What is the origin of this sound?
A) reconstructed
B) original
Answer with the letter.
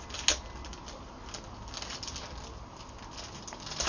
B